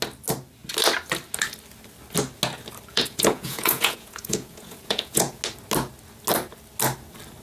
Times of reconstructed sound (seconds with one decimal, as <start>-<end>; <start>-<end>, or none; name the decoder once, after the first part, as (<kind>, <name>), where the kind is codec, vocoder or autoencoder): 2.9-5.4 (vocoder, Vocos)